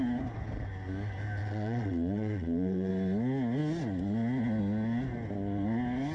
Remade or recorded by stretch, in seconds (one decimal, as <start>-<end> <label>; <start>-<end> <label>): 0.0-1.4 recorded; 1.4-2.9 remade; 2.9-6.1 recorded